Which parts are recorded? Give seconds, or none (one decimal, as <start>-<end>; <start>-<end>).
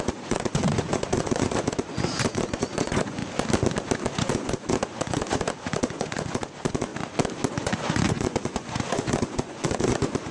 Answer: 3.2-4.1; 6.9-7.5